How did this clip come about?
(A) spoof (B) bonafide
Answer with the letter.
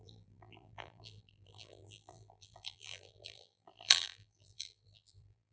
A